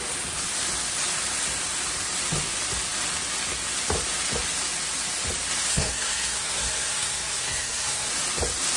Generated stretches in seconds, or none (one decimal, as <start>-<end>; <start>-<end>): 5.7-8.1